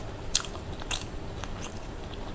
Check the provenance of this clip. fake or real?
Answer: fake